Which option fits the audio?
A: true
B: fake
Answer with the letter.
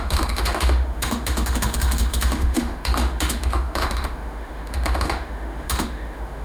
B